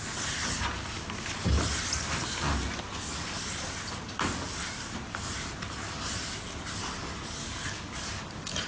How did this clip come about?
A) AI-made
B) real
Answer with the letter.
B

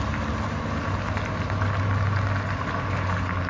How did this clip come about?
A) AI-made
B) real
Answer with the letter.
B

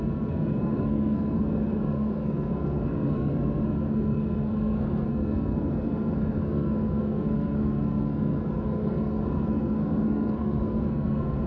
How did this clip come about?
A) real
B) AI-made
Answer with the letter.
B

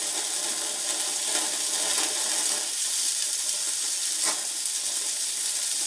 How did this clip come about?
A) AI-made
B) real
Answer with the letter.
B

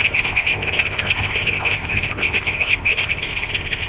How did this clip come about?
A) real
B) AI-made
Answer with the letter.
B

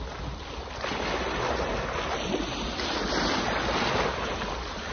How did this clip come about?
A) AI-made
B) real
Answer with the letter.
B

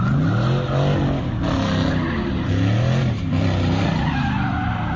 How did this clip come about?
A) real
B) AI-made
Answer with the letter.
A